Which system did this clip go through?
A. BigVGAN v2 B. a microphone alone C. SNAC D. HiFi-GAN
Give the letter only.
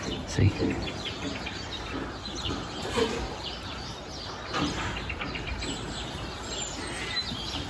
A